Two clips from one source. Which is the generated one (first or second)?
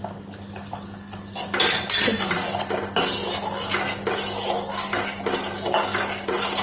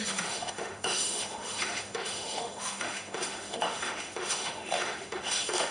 second